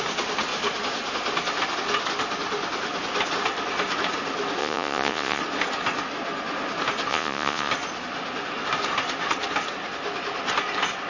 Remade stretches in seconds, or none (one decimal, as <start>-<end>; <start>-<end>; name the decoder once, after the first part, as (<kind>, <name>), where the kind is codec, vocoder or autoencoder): 4.6-5.4 (vocoder, Vocos); 7.1-7.7